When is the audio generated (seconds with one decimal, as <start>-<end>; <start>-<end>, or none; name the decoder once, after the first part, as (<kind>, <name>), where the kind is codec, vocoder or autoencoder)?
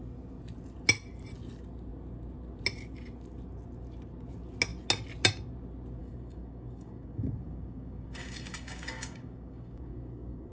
6.0-10.5 (codec, DAC)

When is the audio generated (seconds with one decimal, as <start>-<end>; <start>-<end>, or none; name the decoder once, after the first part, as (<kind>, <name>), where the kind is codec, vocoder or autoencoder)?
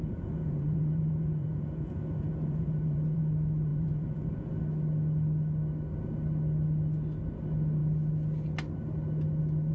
0.0-3.2 (vocoder, Vocos); 3.7-4.5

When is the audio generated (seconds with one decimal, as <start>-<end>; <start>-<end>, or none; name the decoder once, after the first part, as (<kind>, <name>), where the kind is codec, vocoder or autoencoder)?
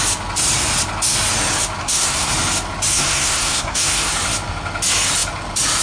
1.8-2.3 (codec, SNAC); 2.9-4.1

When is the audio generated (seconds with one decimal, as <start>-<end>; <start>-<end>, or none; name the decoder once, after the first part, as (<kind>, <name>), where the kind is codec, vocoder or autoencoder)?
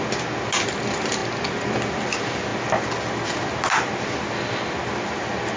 none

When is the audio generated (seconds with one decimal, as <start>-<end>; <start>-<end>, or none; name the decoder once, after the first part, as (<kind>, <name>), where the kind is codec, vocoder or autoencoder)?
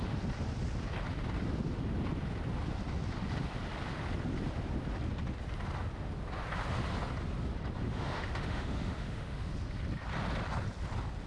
7.9-9.5 (autoencoder, DAC-VAE)